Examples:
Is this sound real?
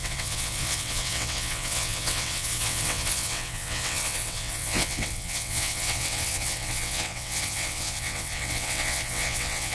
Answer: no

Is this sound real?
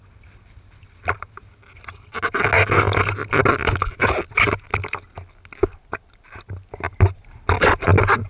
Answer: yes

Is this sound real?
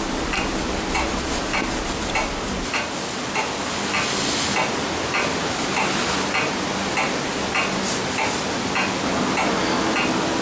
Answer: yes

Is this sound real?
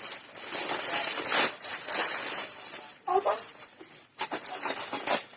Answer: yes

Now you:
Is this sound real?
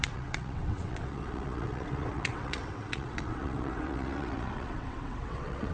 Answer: no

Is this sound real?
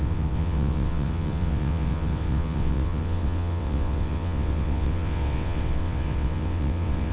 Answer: no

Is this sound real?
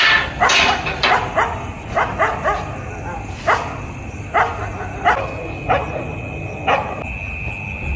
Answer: yes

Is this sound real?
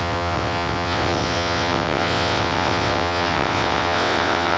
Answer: no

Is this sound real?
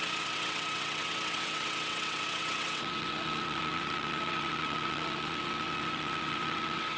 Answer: no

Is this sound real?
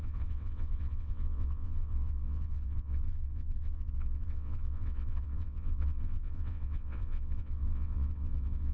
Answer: no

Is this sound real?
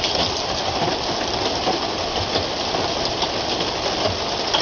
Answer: yes